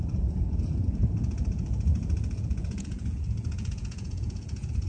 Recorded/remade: remade